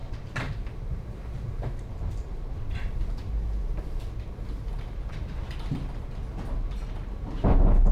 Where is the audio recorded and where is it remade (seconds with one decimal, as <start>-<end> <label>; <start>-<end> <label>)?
0.0-4.7 remade; 4.7-7.9 recorded